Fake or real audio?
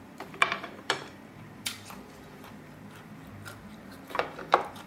fake